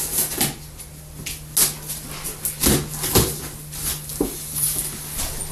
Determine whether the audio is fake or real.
real